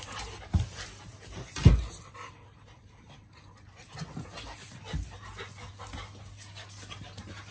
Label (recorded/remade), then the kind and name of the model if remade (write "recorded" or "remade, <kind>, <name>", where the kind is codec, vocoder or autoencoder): recorded